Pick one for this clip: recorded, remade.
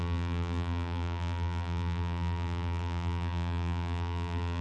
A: remade